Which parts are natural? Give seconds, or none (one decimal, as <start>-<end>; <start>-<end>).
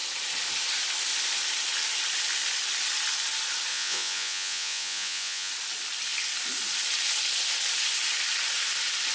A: 0.0-3.7; 5.5-9.1